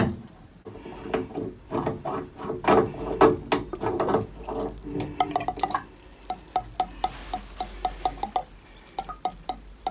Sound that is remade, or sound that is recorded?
recorded